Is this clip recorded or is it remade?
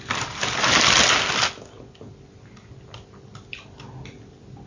recorded